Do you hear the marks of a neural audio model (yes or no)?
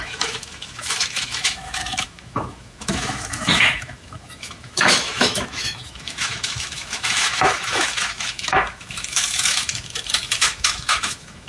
yes